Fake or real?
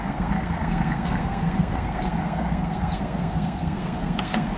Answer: fake